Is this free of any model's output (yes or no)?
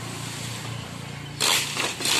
yes